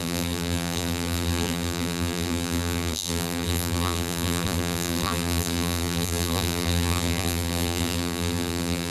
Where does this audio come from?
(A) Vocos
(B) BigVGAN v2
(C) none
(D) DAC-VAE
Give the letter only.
B